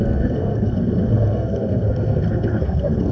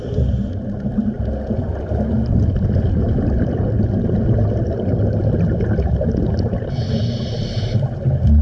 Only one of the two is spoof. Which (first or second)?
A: first